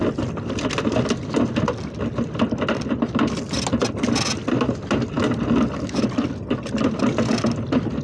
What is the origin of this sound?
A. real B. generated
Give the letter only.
A